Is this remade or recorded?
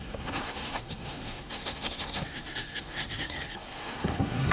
remade